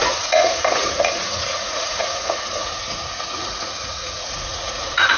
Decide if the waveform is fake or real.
fake